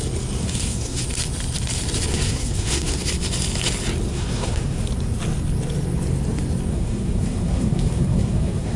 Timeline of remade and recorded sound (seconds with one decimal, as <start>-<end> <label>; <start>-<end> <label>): 0.0-0.4 recorded; 0.4-1.0 remade; 1.0-2.1 recorded; 2.1-3.1 remade; 3.1-4.1 recorded; 4.1-4.8 remade; 4.8-6.7 recorded; 6.7-8.8 remade